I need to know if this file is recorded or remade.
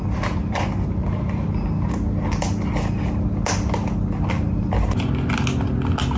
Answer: recorded